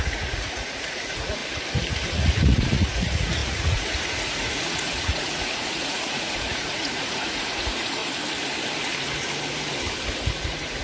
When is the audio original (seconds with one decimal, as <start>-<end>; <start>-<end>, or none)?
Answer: 1.4-2.1; 8.0-10.3